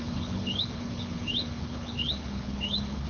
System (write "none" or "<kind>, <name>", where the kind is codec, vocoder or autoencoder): codec, HILCodec